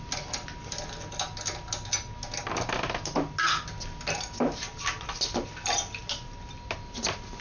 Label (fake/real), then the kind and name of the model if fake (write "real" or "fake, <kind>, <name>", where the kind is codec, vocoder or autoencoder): real